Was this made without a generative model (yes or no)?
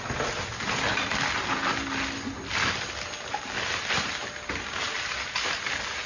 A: yes